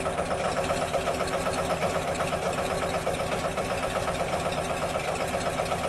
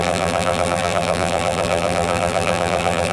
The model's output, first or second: second